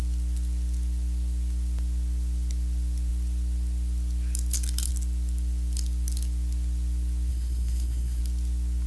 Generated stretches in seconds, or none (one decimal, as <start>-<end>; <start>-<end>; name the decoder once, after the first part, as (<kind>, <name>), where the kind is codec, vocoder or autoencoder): 7.3-8.2 (codec, SNAC)